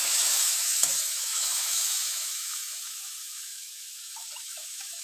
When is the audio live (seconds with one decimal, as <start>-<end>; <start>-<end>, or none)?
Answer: none